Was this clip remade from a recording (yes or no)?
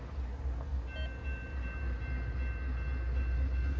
no